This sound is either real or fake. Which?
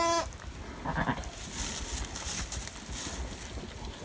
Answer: real